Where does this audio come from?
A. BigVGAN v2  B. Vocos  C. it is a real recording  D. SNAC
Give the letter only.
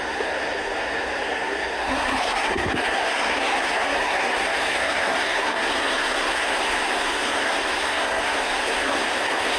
D